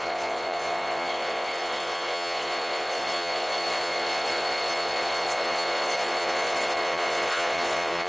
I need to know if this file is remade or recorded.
remade